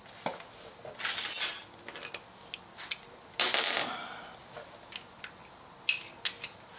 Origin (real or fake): real